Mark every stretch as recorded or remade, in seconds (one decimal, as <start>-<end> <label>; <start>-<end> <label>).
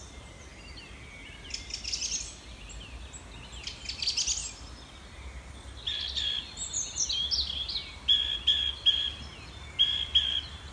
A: 0.0-10.7 recorded